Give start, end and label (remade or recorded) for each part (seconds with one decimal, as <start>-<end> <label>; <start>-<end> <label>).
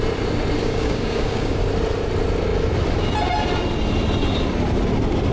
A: 0.0-0.6 recorded; 0.6-1.6 remade; 1.6-5.3 recorded